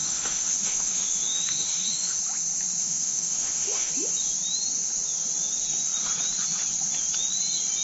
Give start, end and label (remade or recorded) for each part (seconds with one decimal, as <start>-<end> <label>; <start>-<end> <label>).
0.0-2.2 remade; 2.2-2.8 recorded; 2.8-3.9 remade; 3.9-7.8 recorded